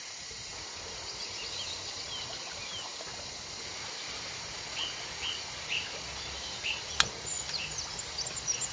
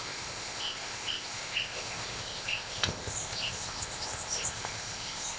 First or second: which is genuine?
first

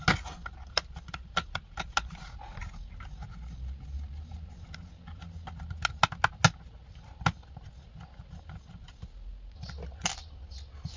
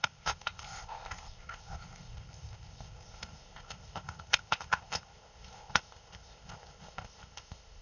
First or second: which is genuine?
first